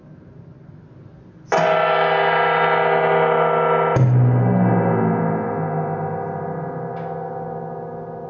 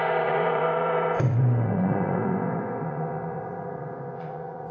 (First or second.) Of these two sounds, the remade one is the second